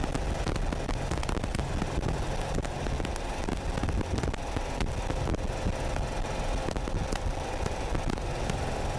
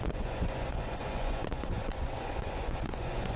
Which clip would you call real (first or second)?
first